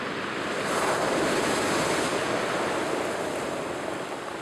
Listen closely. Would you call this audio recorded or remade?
recorded